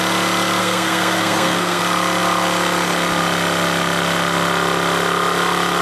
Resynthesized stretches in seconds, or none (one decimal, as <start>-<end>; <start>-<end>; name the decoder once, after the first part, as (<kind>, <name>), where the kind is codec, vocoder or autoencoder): 0.6-1.8 (codec, SNAC)